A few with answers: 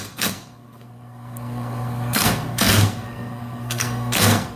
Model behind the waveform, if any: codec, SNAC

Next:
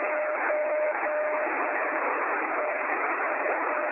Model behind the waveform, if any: codec, HILCodec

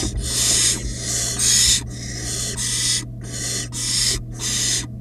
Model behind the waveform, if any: none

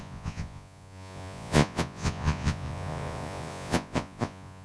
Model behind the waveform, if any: vocoder, Vocos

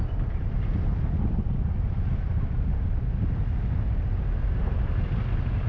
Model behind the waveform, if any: none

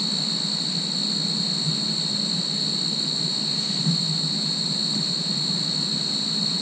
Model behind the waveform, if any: none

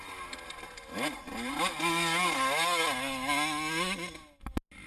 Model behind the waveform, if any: none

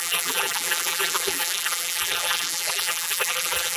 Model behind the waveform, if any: vocoder, BigVGAN v2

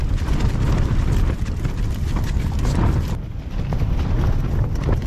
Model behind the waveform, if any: none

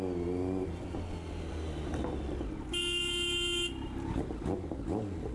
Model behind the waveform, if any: none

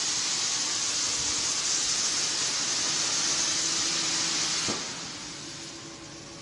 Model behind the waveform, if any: none